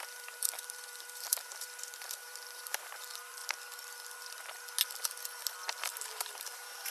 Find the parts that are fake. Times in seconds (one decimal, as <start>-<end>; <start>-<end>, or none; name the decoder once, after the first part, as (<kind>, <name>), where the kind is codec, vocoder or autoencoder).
0.0-3.4 (vocoder, BigVGAN v2); 5.8-6.9